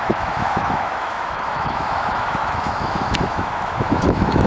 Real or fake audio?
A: fake